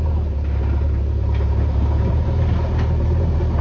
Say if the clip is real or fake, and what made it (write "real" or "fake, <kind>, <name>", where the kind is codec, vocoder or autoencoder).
fake, vocoder, BigVGAN v2